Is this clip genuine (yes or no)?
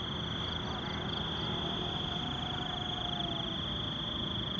yes